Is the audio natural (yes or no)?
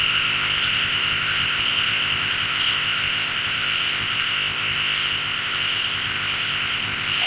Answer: no